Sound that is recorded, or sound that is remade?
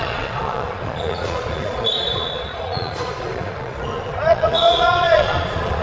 remade